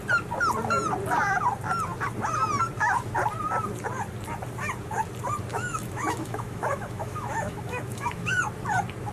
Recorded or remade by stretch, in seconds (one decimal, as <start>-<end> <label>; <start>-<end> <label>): 0.0-5.5 recorded; 5.5-8.4 remade; 8.4-9.1 recorded